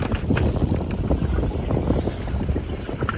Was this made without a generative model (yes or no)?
yes